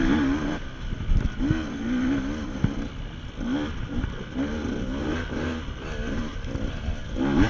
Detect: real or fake real